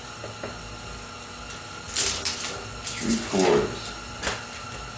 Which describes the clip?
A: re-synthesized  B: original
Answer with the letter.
B